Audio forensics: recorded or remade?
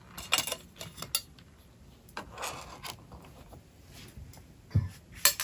recorded